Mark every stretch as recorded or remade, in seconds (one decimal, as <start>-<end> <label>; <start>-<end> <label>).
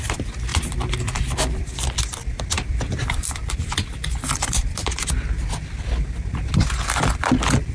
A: 0.0-0.5 recorded; 0.5-5.1 remade; 5.1-7.7 recorded